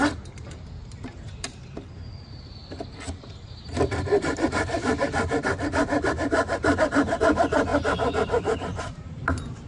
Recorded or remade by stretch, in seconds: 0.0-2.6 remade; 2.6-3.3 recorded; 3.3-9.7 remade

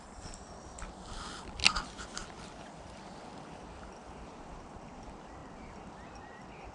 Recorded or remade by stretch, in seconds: 0.0-5.4 recorded; 5.4-6.7 remade

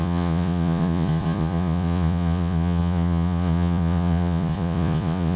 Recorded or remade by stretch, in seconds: 0.0-5.4 remade